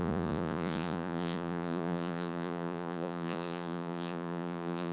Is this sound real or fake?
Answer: fake